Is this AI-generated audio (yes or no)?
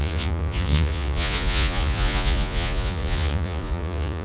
yes